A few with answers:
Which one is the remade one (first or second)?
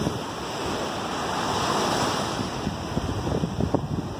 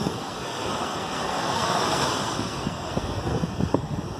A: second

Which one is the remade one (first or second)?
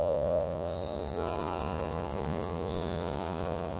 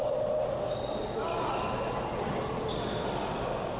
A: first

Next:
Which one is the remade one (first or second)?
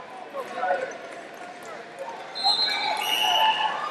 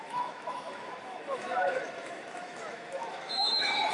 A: second